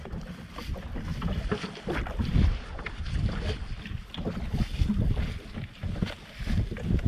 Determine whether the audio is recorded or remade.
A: recorded